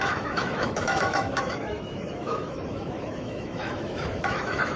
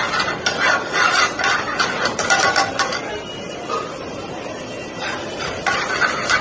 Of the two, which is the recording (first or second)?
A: second